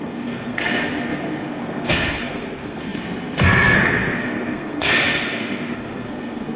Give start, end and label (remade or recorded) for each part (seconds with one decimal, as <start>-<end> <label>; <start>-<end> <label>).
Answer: 0.0-6.6 remade